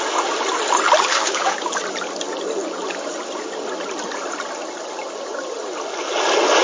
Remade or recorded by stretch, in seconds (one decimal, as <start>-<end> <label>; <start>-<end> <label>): 0.0-1.1 recorded; 1.1-1.7 remade; 1.7-6.6 recorded